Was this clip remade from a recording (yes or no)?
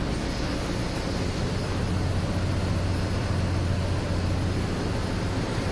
no